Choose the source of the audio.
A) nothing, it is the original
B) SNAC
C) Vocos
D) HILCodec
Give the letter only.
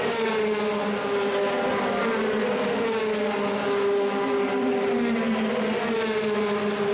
A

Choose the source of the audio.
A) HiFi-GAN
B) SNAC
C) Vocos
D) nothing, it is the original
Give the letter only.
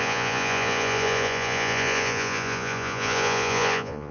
C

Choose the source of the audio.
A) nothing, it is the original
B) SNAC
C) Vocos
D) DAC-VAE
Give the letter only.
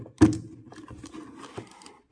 A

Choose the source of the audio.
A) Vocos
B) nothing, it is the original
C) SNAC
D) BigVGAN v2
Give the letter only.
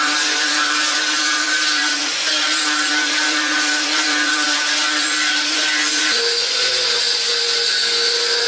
A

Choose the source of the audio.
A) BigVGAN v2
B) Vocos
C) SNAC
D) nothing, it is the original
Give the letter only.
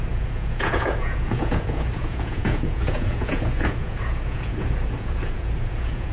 B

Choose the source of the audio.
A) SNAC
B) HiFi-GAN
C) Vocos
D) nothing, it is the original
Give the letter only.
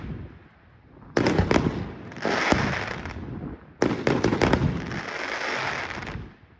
D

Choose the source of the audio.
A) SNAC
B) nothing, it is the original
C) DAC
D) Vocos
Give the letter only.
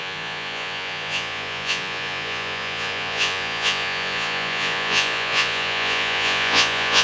D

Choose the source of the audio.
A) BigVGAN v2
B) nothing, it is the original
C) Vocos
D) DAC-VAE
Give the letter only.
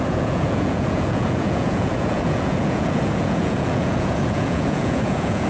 C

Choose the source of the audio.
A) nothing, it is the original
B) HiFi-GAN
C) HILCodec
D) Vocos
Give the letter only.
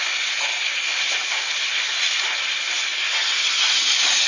A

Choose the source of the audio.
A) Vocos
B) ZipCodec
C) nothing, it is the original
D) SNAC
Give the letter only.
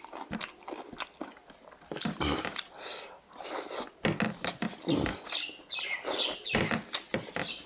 C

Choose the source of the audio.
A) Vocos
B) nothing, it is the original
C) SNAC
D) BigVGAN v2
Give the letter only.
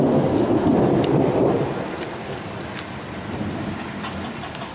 B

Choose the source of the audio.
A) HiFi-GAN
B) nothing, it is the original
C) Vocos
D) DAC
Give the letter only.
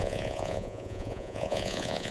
C